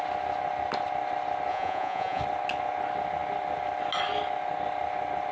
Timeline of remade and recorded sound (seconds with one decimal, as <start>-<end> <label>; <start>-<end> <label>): 0.0-1.5 recorded; 1.5-2.2 remade; 2.2-5.3 recorded